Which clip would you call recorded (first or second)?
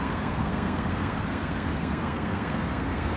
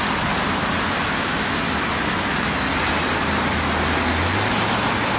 second